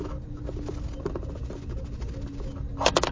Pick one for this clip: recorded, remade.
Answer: recorded